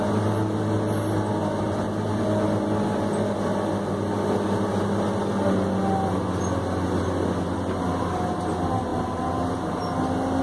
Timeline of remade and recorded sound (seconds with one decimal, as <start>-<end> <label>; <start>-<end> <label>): 0.0-10.4 recorded